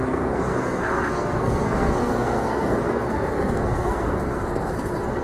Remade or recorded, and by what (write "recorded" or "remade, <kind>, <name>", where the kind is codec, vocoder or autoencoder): remade, codec, SNAC